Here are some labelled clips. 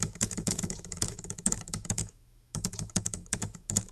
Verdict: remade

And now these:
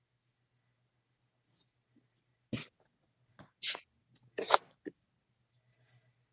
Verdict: recorded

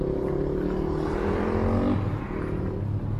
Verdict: recorded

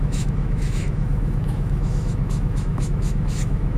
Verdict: remade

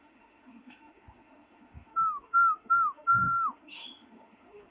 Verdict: remade